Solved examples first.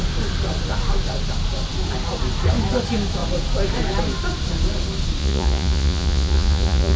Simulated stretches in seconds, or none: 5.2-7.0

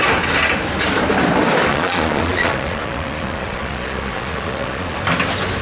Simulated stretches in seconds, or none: 1.7-5.0